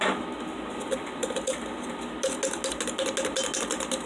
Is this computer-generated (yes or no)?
no